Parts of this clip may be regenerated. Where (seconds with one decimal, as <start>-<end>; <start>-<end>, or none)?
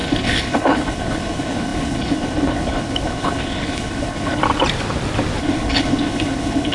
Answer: 0.0-4.4; 5.4-6.7